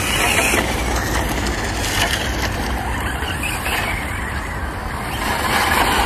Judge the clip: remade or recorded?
recorded